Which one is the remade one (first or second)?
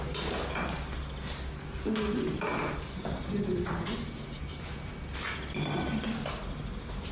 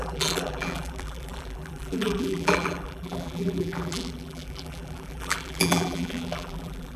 second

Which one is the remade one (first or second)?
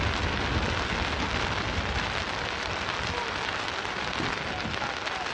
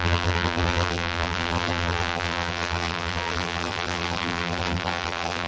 second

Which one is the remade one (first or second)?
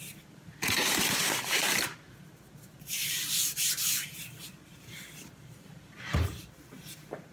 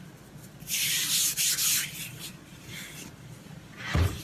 first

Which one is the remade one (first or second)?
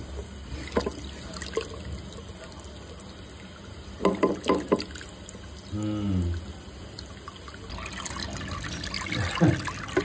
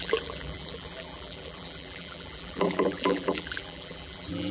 second